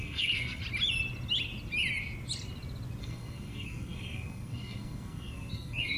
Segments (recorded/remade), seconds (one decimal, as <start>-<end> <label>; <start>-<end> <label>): 0.0-0.6 remade; 0.6-3.0 recorded; 3.0-6.0 remade